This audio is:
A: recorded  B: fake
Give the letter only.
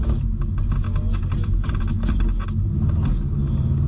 A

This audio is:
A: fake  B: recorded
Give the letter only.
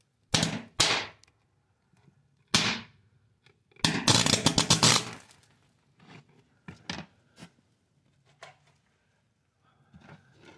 B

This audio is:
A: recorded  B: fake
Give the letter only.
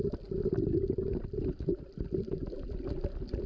A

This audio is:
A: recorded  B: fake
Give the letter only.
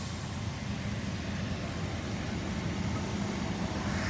A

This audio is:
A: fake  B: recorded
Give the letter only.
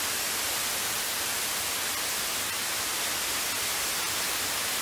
B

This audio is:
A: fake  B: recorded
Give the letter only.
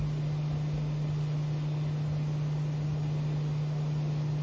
B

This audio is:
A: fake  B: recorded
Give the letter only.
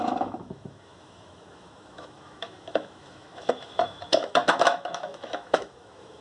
A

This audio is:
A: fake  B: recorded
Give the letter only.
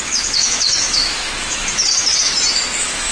A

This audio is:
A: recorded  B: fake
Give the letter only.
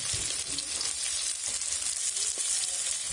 A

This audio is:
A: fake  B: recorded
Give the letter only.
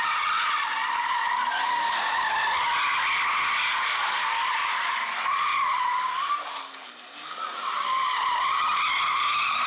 B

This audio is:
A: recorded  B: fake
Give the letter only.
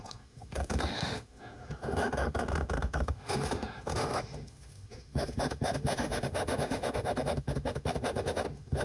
B